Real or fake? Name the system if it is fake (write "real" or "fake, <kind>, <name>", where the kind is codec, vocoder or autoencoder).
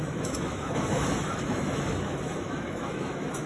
fake, autoencoder, DAC-VAE